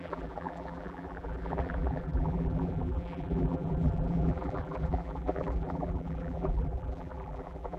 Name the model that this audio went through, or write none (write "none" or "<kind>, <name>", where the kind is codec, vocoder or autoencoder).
vocoder, BigVGAN v2